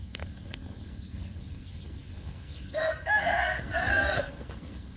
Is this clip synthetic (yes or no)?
yes